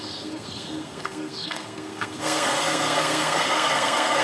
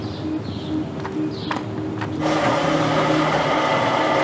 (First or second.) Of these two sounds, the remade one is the first